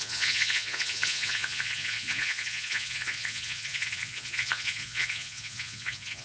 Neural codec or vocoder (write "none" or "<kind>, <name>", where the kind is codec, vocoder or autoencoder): vocoder, Vocos